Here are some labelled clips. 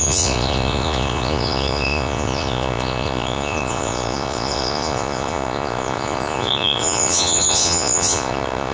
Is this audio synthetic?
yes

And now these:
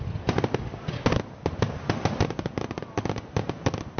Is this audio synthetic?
no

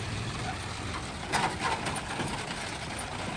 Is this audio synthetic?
no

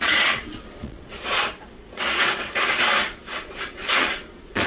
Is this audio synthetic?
yes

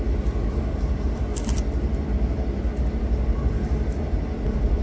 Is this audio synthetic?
no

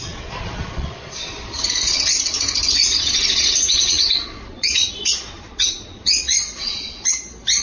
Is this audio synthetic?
yes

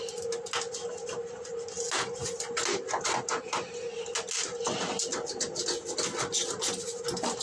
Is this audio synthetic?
no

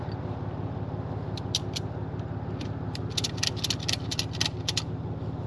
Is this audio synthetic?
no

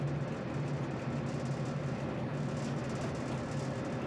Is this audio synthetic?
no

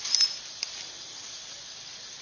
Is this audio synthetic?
no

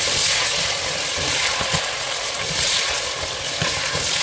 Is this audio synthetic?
no